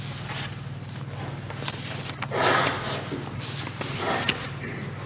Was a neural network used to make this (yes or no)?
no